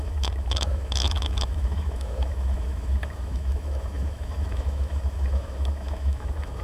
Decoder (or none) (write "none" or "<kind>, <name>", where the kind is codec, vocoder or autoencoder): autoencoder, DAC-VAE